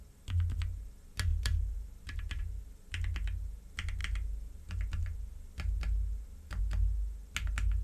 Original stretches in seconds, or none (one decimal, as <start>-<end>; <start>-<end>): 0.0-1.3; 2.4-7.8